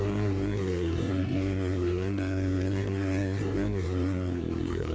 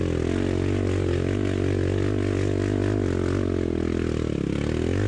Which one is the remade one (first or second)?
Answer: first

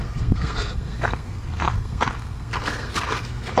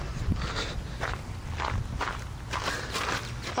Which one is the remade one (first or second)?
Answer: first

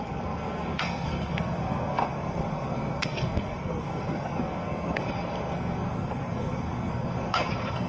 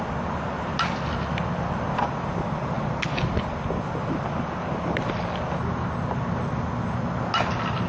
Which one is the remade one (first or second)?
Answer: first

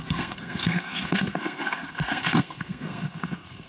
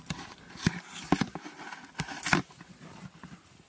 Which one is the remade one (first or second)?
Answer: first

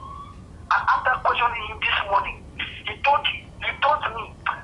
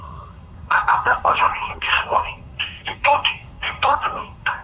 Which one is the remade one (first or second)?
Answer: second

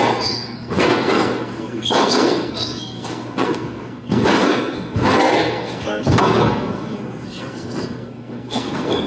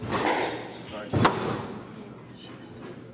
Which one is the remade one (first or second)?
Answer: first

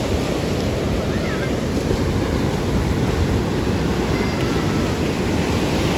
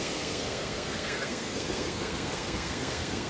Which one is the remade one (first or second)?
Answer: second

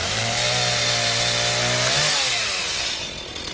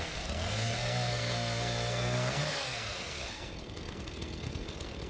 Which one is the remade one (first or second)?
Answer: second